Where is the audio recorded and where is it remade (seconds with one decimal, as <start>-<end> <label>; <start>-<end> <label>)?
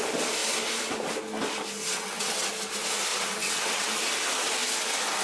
0.0-1.9 recorded; 1.9-2.5 remade; 2.5-3.1 recorded; 3.1-3.9 remade; 3.9-5.2 recorded